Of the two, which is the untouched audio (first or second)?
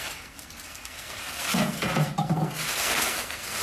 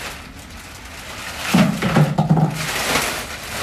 second